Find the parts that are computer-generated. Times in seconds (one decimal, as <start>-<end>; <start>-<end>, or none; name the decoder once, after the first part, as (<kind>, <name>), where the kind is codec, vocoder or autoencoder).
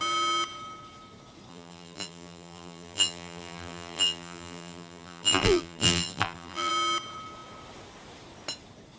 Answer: 1.5-6.7 (vocoder, BigVGAN v2)